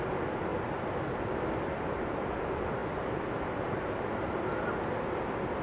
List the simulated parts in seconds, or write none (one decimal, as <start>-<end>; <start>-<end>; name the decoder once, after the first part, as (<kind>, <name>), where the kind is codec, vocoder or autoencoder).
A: none